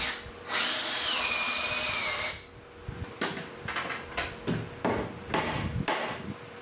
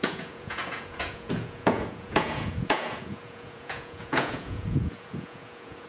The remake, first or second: second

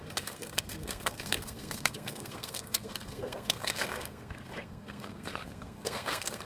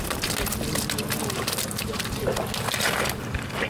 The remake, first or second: first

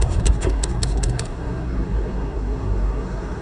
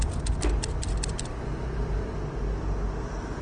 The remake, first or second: first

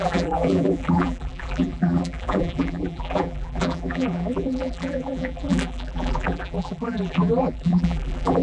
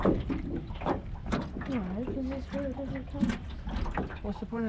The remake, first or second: first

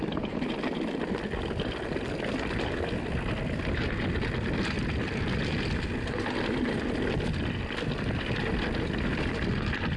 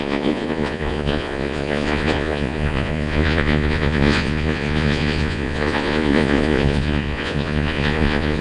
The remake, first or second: second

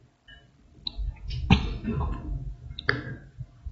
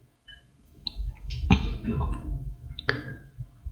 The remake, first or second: second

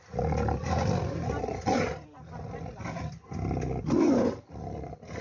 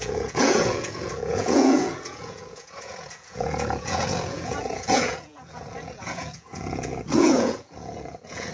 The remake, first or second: second